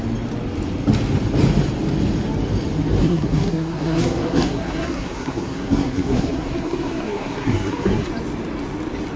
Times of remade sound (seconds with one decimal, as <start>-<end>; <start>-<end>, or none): 3.0-8.1